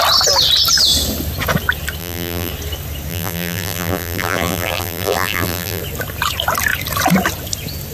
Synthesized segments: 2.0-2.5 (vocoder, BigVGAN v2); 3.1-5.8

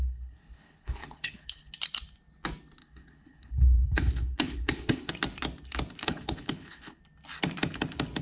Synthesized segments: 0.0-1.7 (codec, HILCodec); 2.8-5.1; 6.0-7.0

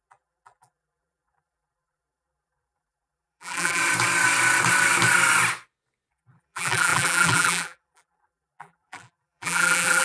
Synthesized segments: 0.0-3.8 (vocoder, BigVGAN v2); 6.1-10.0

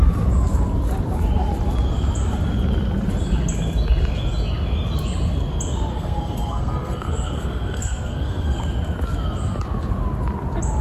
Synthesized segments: 5.9-8.6 (codec, SNAC)